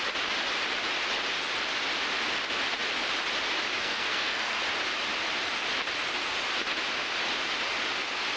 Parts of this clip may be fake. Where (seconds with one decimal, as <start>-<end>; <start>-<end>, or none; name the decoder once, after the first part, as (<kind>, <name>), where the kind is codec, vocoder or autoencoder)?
3.8-4.6 (codec, SNAC)